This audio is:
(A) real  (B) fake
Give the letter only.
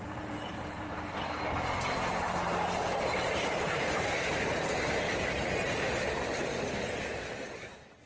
B